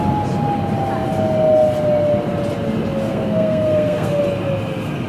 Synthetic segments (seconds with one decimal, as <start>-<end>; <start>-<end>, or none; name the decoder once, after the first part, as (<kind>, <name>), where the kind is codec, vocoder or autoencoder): 3.1-4.2 (codec, SNAC)